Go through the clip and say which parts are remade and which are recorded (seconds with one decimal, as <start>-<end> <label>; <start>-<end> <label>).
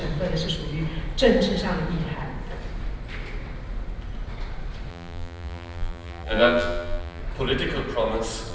0.0-4.9 recorded; 4.9-7.2 remade; 7.2-8.5 recorded